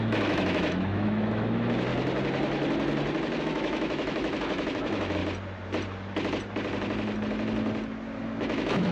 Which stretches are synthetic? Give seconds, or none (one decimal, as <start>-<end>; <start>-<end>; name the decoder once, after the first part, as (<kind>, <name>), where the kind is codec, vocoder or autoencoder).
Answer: 0.0-1.9 (autoencoder, DAC-VAE); 3.4-5.2; 8.2-8.9